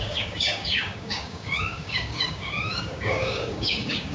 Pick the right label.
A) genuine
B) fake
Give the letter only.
B